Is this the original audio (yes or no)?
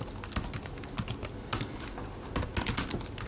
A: yes